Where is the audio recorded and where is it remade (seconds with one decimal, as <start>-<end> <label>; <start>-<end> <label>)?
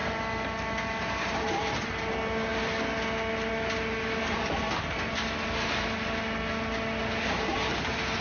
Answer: 0.0-8.2 recorded